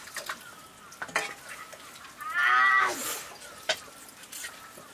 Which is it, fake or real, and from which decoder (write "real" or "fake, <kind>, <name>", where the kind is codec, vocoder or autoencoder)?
real